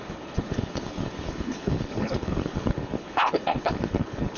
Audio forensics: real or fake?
fake